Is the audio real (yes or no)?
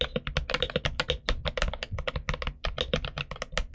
yes